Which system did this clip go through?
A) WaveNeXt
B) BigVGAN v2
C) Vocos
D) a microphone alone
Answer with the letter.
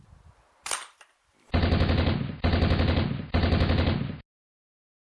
D